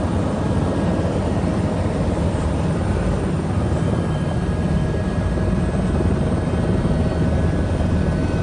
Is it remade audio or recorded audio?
recorded